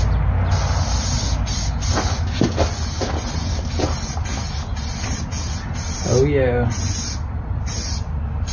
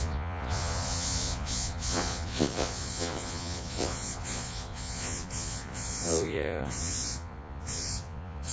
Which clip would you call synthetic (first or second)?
second